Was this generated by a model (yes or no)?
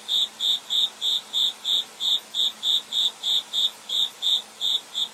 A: yes